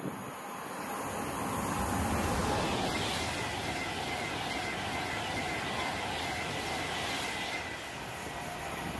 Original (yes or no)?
yes